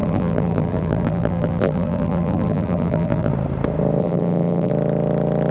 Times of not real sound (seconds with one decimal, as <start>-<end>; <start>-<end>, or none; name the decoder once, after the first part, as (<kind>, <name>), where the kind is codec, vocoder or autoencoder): 0.0-3.3 (vocoder, BigVGAN v2); 4.0-4.7